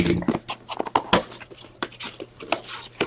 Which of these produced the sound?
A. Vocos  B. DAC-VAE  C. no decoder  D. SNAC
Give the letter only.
C